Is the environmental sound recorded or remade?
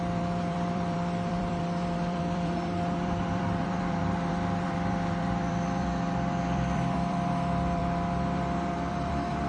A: remade